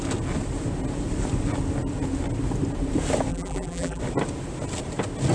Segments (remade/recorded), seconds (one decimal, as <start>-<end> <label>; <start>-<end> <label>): 0.0-3.3 recorded; 3.3-4.0 remade; 4.0-5.3 recorded